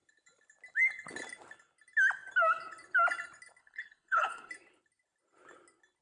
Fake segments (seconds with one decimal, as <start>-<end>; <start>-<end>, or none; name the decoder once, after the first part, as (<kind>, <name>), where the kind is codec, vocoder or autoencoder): 3.6-4.5 (codec, HILCodec)